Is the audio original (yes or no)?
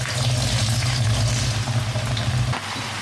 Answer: yes